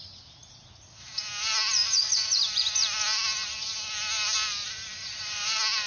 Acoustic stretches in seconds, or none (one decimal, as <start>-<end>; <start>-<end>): 0.0-5.9